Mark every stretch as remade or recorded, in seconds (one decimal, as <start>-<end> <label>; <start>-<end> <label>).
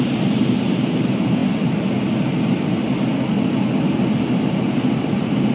0.0-5.5 recorded